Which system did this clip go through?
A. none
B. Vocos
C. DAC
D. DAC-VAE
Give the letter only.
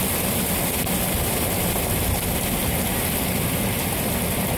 A